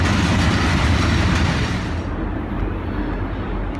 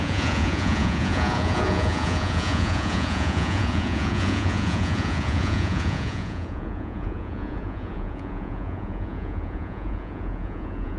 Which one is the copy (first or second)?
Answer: second